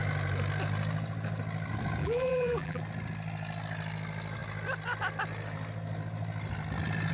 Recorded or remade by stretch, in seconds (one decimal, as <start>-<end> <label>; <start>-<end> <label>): 0.0-2.0 recorded; 2.0-2.8 remade; 2.8-7.1 recorded